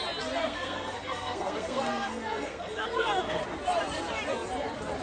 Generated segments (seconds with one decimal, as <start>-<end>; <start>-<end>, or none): 0.4-3.4